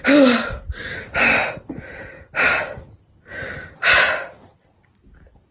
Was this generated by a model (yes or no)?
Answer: no